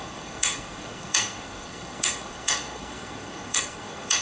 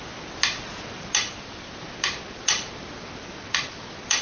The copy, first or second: first